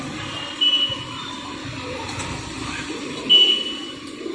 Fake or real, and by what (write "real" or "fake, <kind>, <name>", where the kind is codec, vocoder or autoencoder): real